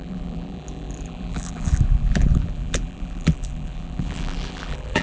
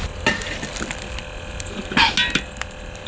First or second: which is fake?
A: first